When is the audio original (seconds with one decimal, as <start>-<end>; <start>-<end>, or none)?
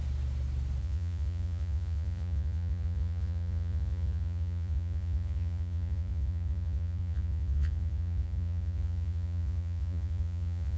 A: 0.0-0.8